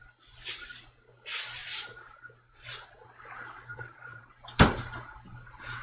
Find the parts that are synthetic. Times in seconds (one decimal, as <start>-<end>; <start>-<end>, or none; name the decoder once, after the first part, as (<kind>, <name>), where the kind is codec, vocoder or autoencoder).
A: 1.6-2.3 (vocoder, BigVGAN v2); 3.7-4.2